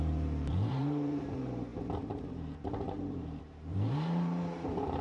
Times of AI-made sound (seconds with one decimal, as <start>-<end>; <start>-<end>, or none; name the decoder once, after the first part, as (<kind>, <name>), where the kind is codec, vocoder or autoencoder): 0.0-5.0 (vocoder, BigVGAN v2)